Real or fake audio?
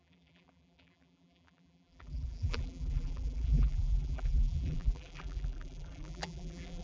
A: fake